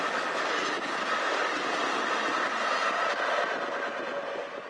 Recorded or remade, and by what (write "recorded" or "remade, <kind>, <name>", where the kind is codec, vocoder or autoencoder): recorded